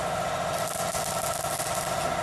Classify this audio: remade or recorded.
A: recorded